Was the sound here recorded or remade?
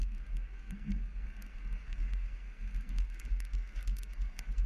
remade